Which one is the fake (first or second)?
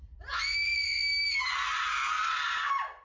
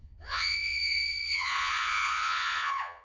second